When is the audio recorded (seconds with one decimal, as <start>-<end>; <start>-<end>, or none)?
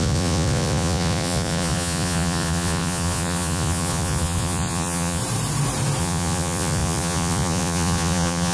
5.2-6.0